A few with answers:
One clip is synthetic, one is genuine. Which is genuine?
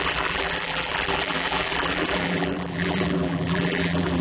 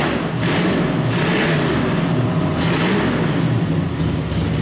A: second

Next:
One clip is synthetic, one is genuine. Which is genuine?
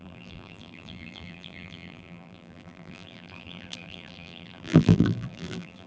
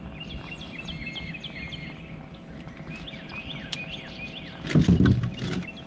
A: second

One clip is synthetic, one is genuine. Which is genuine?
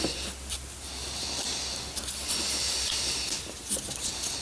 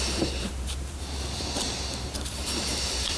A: first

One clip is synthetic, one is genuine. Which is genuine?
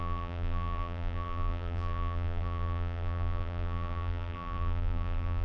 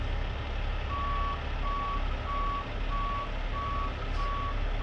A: second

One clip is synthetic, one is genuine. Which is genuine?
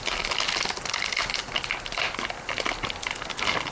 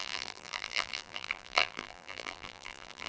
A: first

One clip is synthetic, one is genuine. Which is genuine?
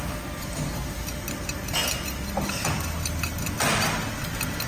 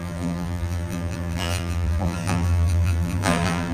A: first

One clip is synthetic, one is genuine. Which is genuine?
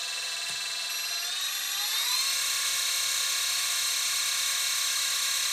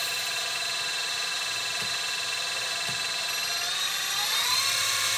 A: first